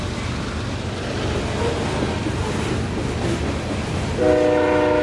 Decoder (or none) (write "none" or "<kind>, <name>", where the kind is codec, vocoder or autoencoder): none